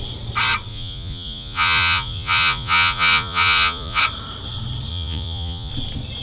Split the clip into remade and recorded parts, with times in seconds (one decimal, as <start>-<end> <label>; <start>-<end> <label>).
0.0-0.7 recorded; 0.7-4.0 remade; 4.0-4.9 recorded; 4.9-5.7 remade; 5.7-6.2 recorded